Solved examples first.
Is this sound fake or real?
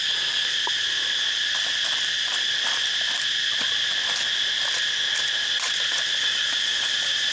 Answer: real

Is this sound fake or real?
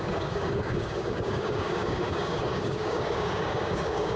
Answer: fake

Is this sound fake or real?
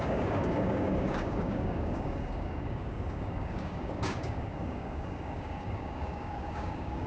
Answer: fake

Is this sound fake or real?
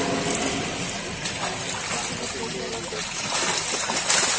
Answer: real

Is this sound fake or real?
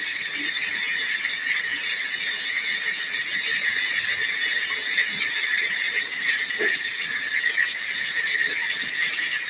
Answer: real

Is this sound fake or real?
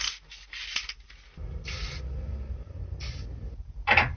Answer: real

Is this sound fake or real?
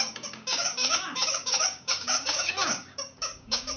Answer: fake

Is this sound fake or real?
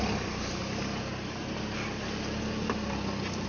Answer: real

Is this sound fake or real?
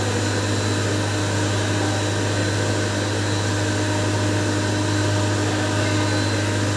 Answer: real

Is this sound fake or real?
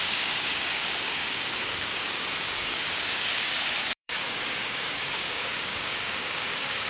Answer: fake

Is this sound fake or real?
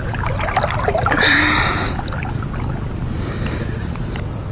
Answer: real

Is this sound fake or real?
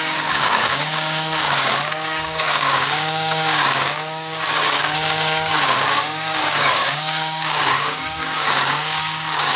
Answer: fake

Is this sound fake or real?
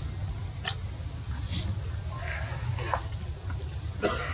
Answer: real